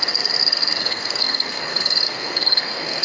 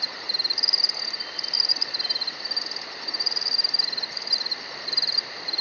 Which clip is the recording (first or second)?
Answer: second